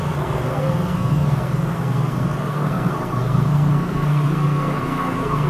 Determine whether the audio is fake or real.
fake